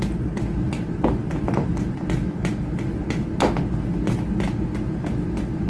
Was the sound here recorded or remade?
recorded